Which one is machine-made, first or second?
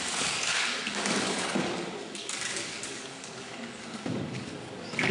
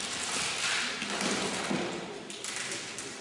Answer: first